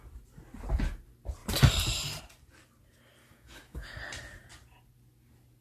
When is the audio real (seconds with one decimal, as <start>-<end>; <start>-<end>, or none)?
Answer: 0.0-3.2; 4.0-5.6